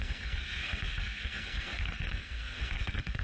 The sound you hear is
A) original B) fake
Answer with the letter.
B